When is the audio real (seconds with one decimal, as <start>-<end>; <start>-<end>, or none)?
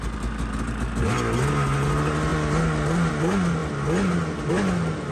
0.0-5.1